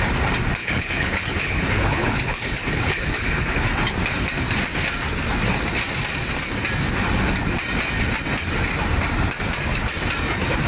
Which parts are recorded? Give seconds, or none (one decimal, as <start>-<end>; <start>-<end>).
0.0-0.6; 3.6-10.7